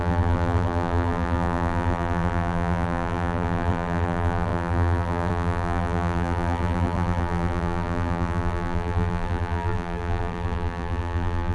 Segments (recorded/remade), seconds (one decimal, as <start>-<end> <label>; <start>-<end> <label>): 0.0-11.5 remade